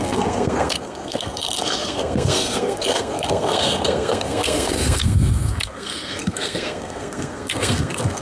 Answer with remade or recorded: remade